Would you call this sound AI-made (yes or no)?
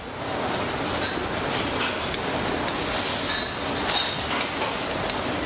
no